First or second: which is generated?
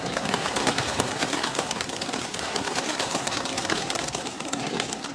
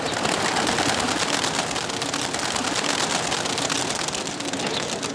first